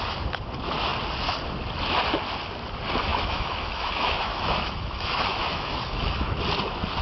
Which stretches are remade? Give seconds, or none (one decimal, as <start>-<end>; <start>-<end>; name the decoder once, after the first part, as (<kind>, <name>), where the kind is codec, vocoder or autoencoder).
3.1-6.4 (autoencoder, DAC-VAE)